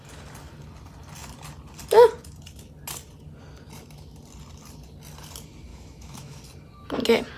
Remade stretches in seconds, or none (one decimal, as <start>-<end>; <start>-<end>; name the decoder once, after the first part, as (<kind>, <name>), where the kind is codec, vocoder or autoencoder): 5.7-6.4 (autoencoder, DAC-VAE)